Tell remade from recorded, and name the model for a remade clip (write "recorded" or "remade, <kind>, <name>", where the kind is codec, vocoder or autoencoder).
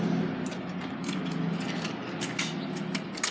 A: recorded